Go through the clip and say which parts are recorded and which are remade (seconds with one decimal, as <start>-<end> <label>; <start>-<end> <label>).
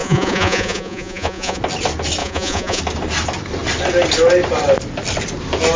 0.0-1.6 remade; 1.6-2.2 recorded; 2.2-2.8 remade; 2.8-5.8 recorded